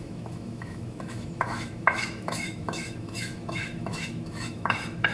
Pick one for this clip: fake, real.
fake